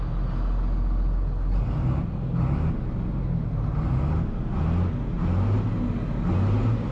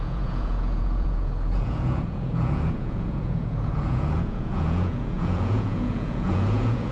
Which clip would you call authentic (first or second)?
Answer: first